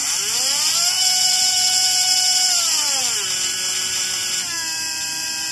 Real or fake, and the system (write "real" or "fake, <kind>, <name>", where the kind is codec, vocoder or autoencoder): fake, vocoder, BigVGAN v2